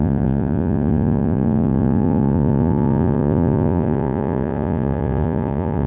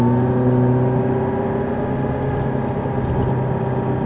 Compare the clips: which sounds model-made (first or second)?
first